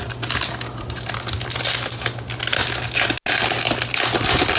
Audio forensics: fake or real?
real